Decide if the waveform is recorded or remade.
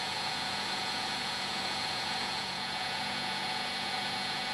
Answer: remade